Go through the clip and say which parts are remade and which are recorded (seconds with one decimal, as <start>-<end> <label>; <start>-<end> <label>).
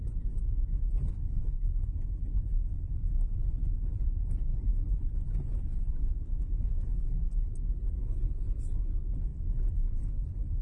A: 0.0-10.6 recorded